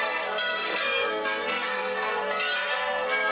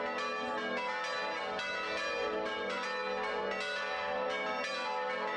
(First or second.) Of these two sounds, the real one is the second